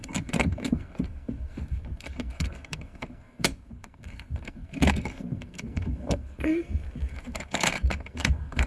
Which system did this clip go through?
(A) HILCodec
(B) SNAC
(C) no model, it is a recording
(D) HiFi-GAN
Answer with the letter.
B